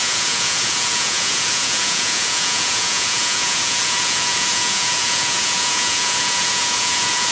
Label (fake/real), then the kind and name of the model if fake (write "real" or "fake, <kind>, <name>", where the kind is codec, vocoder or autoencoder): fake, vocoder, Vocos